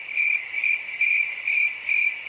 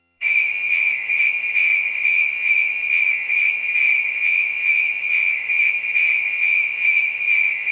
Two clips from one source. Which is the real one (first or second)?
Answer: first